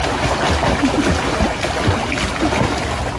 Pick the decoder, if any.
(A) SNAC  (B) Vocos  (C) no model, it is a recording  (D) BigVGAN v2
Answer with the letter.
C